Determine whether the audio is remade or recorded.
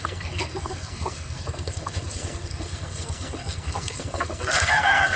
remade